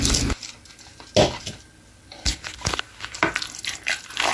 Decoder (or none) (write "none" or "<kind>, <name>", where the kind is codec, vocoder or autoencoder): none